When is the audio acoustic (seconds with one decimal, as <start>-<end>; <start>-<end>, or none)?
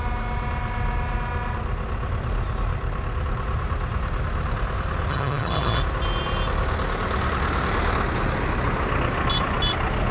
0.0-5.1; 5.8-10.1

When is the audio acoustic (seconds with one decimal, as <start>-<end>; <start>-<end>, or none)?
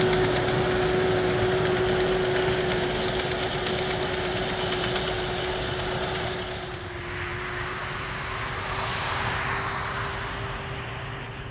0.0-11.5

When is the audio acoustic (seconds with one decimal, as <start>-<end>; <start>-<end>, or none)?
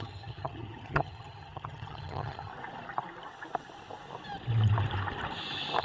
2.5-5.8